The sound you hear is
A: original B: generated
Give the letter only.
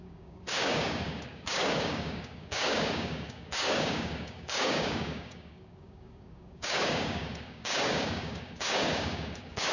B